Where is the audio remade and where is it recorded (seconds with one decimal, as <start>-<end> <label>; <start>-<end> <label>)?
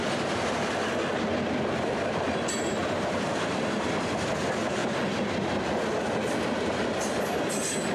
0.0-7.9 recorded